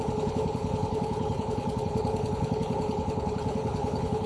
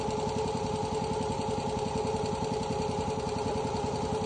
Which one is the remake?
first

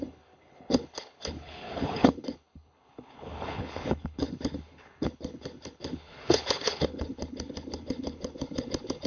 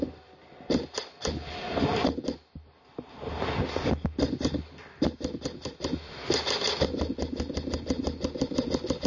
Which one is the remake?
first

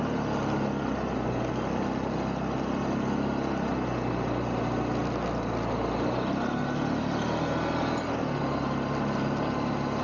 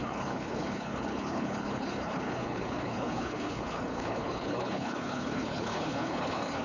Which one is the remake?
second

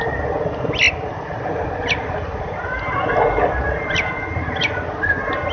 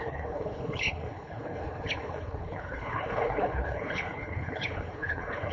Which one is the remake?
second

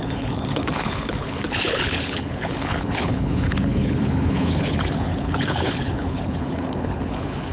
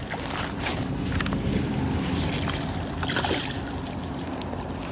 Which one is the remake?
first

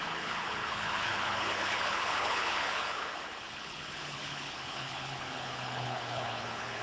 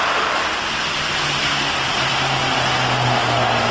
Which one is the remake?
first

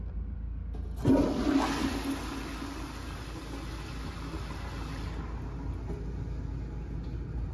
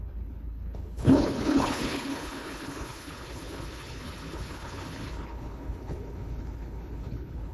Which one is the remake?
second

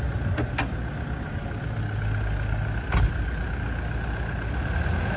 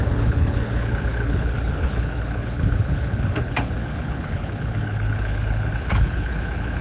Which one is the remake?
second